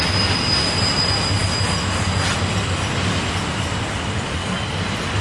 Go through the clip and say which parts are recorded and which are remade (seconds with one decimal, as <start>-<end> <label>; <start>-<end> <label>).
0.0-5.2 recorded